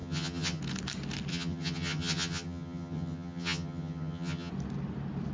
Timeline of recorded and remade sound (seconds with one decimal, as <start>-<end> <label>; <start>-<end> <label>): 0.0-0.6 remade; 0.6-1.3 recorded; 1.3-4.5 remade; 4.5-5.3 recorded